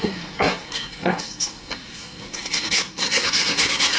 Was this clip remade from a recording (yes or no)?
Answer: yes